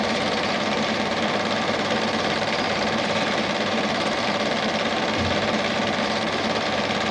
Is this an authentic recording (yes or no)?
no